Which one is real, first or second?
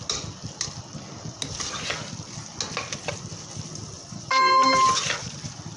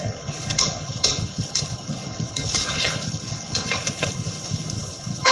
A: first